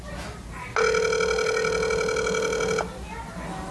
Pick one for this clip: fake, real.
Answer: real